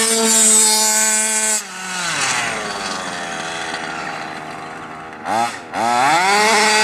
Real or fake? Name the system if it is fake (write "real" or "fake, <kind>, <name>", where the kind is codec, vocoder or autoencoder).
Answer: real